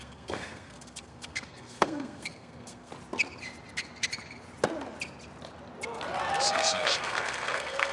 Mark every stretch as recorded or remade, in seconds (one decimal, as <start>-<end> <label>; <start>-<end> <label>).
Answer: 0.0-2.9 remade; 2.9-6.5 recorded; 6.5-7.9 remade